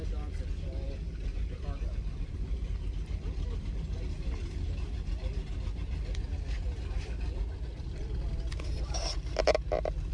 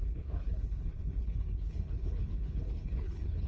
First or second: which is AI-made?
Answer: second